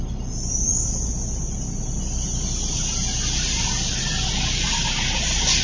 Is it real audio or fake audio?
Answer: real